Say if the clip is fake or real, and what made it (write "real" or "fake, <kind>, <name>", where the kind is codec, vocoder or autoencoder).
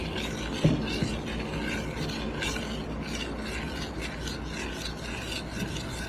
real